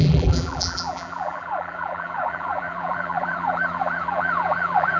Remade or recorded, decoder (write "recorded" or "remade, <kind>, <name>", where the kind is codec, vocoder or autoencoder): remade, vocoder, BigVGAN v2